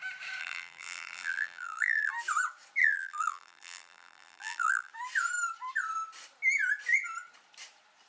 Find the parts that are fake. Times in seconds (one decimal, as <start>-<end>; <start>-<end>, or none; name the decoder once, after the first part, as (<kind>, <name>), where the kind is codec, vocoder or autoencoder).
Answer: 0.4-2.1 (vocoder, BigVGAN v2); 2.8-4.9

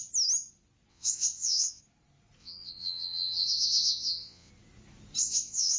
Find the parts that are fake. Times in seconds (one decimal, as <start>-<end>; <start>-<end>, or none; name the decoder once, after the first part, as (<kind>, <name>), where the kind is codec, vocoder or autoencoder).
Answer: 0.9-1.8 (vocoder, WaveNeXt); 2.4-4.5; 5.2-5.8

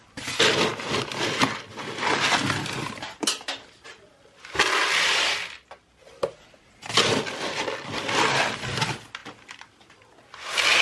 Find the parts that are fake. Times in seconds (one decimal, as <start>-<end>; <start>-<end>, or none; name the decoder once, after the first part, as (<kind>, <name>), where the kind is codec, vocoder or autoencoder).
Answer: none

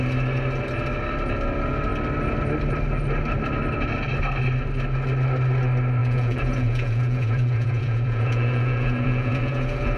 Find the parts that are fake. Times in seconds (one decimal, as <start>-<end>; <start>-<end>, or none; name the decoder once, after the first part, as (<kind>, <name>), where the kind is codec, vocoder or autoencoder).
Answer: 6.0-10.0 (vocoder, Vocos)

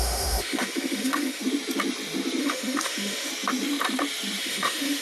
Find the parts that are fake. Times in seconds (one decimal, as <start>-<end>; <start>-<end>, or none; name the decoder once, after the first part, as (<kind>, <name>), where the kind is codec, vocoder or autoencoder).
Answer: 0.0-1.4 (autoencoder, DAC-VAE); 2.4-3.3; 4.4-5.0